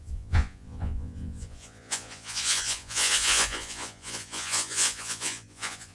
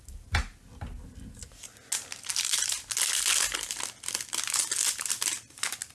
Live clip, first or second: second